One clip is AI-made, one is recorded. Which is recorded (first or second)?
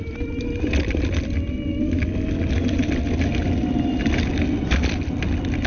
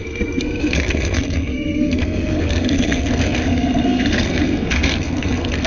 first